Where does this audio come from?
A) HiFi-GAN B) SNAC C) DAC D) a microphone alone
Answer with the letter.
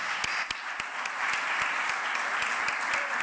D